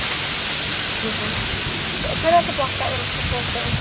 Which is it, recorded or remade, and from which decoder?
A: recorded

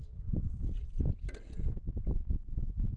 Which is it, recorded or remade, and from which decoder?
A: recorded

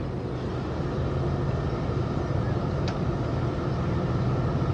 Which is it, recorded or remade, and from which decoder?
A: recorded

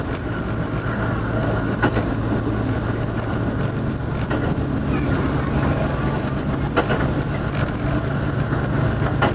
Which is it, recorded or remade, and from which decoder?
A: recorded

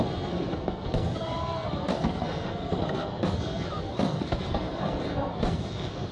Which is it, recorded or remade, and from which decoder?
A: remade, codec, SNAC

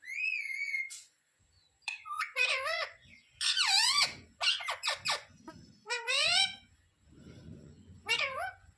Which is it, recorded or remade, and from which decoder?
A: remade, vocoder, Vocos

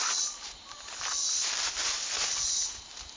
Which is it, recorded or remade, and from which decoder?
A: recorded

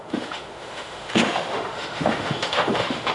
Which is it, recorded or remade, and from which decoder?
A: remade, autoencoder, DAC-VAE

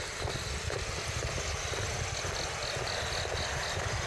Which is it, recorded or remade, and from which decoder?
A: recorded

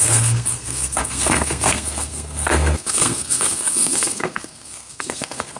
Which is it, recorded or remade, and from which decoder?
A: remade, codec, SNAC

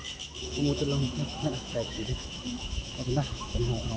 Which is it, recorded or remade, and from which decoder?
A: remade, autoencoder, DAC-VAE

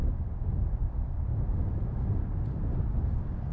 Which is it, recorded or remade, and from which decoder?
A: recorded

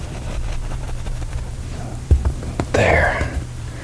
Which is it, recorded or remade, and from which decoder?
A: remade, vocoder, BigVGAN v2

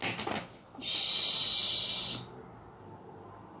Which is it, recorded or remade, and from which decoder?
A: recorded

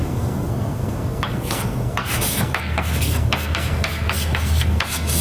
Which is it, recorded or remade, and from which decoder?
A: remade, codec, SNAC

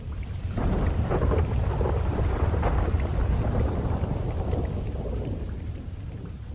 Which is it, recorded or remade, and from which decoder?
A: recorded